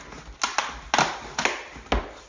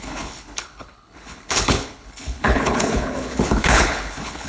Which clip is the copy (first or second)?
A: second